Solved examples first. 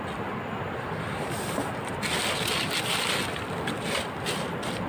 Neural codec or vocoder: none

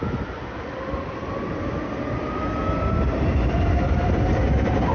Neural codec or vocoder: none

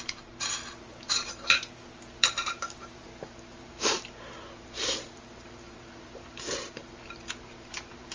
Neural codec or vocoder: vocoder, BigVGAN v2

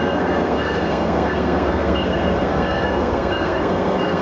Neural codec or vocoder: codec, SNAC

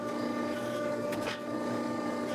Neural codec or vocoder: codec, DAC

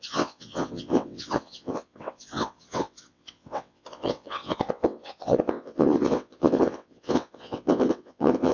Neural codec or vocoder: vocoder, WaveNeXt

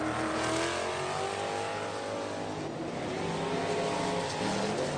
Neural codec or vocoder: none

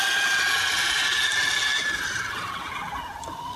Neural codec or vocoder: none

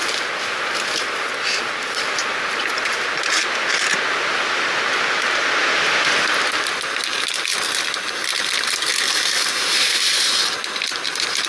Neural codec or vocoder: none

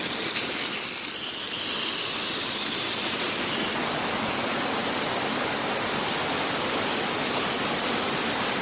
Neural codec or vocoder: none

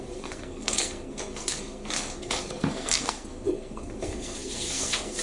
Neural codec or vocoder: codec, SNAC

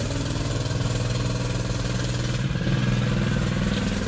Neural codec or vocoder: none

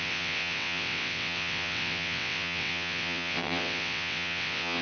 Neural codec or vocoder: vocoder, WaveNeXt